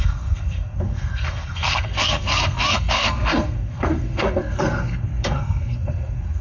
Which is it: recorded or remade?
remade